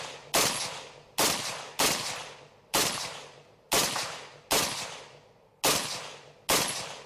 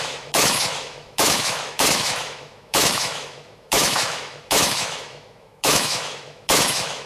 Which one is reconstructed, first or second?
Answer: second